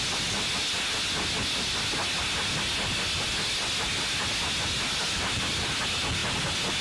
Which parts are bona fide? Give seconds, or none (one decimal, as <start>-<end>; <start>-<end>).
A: 0.0-6.8